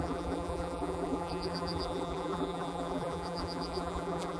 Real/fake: fake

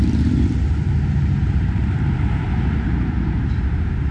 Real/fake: fake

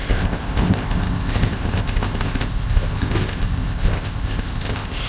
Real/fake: fake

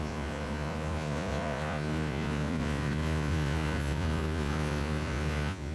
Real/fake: fake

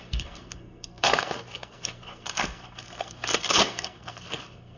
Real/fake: fake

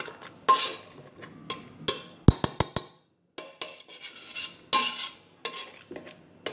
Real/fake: real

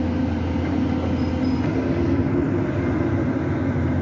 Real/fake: real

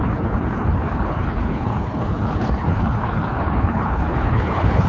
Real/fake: fake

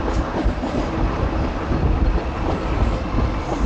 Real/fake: real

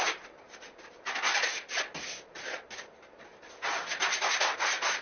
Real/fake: real